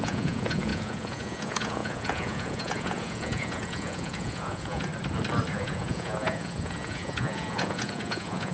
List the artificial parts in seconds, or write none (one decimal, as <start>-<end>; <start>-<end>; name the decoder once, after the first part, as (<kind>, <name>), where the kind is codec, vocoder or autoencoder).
0.0-4.9 (vocoder, Vocos); 5.5-8.5